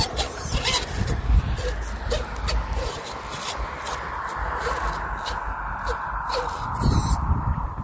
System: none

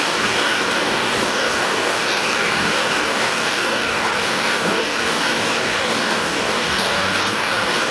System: codec, DAC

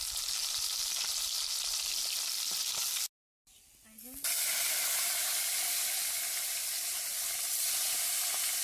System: none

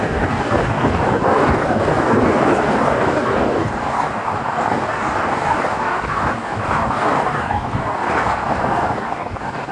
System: codec, DAC